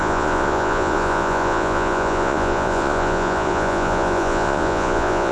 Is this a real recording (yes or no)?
no